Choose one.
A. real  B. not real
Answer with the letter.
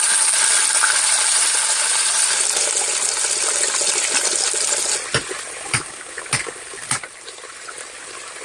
A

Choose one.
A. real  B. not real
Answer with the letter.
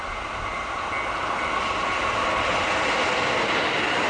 A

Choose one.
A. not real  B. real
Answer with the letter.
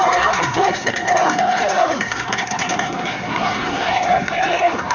A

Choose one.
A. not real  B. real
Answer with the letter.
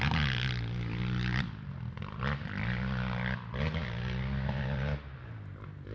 B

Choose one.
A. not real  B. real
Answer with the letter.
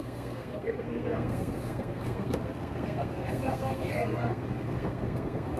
A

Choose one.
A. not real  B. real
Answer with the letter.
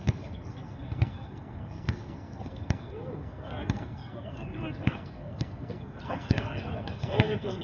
A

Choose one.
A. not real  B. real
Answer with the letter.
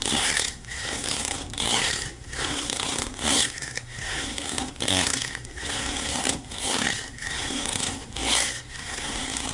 A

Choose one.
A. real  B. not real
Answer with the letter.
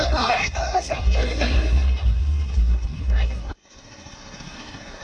B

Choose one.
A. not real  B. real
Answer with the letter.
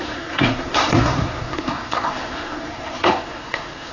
A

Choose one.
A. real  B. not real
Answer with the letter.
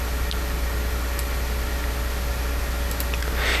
A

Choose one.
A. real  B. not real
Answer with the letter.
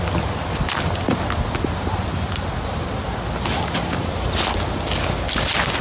A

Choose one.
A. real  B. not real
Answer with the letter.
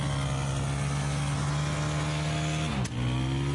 A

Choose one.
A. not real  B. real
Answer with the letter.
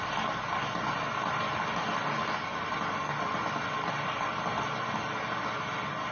B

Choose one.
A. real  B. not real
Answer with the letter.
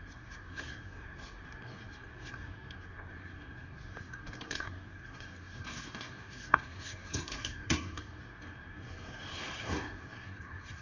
B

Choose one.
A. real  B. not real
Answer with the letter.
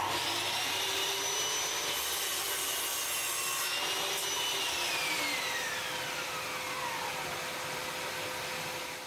A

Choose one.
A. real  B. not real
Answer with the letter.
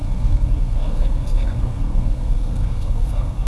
B